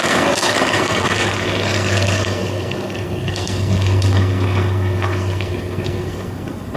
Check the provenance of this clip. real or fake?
fake